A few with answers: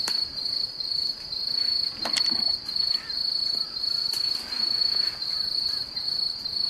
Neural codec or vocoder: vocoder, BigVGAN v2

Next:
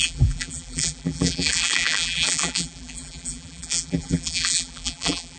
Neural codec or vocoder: vocoder, BigVGAN v2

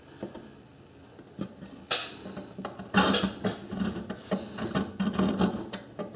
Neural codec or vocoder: none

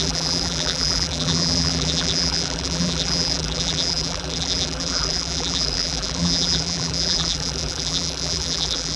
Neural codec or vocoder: vocoder, BigVGAN v2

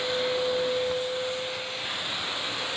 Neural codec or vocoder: none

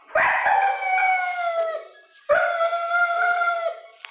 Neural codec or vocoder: none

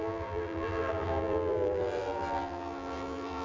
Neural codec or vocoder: vocoder, BigVGAN v2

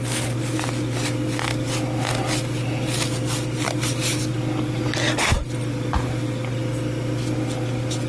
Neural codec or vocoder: none